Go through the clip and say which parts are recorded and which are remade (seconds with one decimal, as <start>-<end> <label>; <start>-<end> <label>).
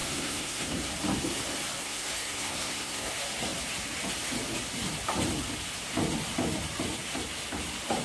0.0-0.9 remade; 0.9-1.8 recorded; 1.8-3.1 remade; 3.1-8.0 recorded